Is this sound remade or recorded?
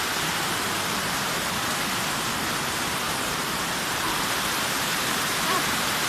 remade